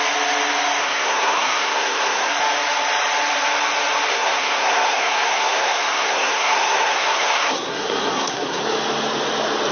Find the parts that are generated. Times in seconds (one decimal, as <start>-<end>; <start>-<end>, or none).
0.8-2.3; 4.1-8.6